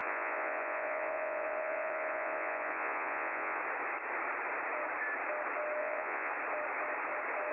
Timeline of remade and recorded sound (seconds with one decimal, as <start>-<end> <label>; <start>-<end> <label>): 0.0-3.6 remade; 3.6-5.8 recorded; 5.8-6.3 remade; 6.3-7.5 recorded